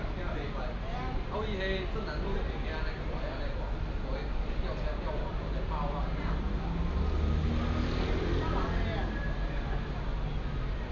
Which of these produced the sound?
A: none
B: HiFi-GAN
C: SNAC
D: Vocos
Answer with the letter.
A